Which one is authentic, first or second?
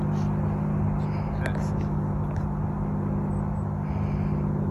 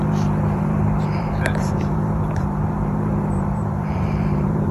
first